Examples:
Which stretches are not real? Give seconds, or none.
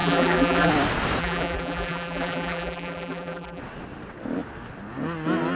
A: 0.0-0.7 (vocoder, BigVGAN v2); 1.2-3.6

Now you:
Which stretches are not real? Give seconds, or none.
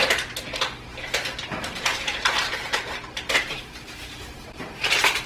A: 0.0-5.3 (vocoder, BigVGAN v2)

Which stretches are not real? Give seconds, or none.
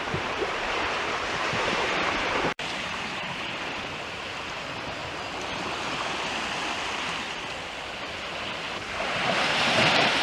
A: 0.0-5.0 (vocoder, BigVGAN v2); 8.8-10.2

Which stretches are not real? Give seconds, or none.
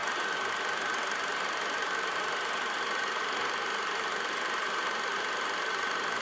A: 1.0-4.7 (vocoder, BigVGAN v2)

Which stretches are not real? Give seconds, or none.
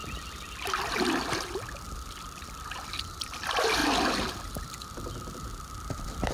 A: 0.0-3.8 (vocoder, BigVGAN v2); 4.3-6.3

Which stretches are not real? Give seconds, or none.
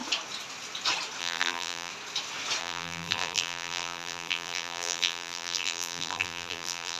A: 1.2-1.9 (vocoder, BigVGAN v2); 2.6-7.0